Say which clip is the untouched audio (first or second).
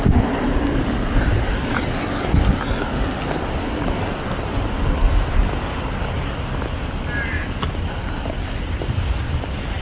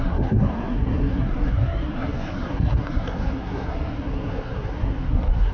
first